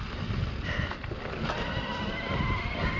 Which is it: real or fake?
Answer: real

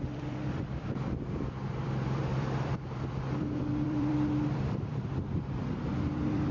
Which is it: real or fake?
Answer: fake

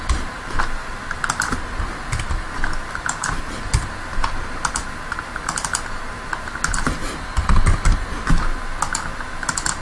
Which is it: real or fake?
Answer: real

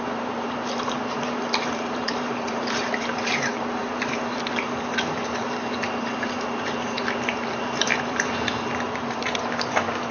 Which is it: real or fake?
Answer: fake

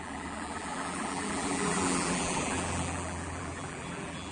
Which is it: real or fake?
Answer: fake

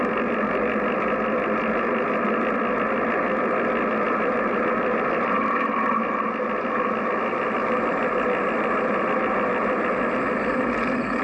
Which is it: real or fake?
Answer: real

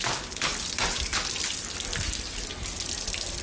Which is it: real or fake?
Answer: real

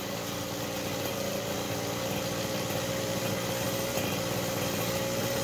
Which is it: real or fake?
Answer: real